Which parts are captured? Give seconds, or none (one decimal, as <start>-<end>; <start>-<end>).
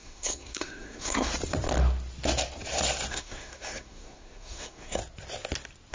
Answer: 1.3-3.1; 5.0-5.9